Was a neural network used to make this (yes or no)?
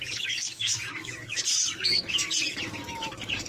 yes